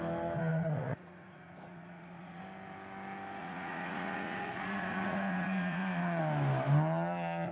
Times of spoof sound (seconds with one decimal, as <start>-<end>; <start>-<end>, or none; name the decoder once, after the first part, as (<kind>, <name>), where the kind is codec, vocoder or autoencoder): 0.5-2.4 (vocoder, Vocos); 3.4-6.2